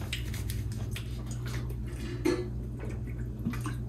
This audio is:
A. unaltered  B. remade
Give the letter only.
A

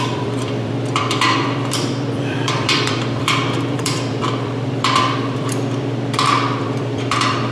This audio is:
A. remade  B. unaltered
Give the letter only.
A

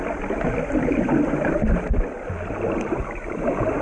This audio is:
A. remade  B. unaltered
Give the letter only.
B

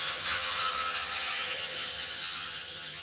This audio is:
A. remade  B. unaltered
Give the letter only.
A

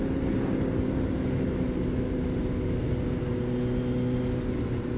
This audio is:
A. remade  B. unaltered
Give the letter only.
B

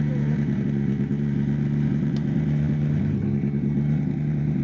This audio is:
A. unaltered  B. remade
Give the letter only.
B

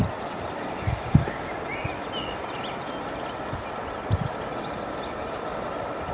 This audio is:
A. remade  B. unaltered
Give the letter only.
B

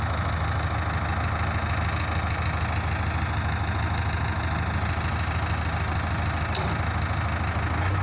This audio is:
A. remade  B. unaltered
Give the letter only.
B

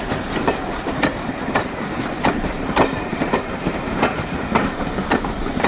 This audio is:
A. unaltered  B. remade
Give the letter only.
B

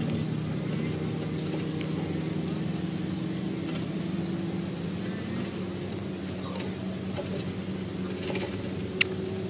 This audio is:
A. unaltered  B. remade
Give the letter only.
A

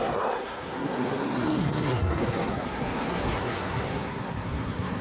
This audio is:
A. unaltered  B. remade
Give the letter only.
B